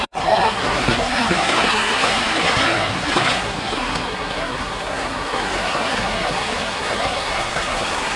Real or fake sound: fake